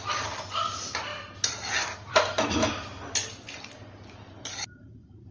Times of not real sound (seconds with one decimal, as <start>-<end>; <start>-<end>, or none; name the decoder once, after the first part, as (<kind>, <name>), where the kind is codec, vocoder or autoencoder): none